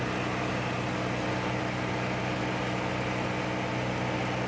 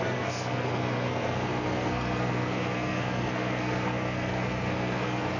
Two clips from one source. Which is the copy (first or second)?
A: second